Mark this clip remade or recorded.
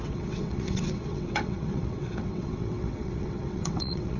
remade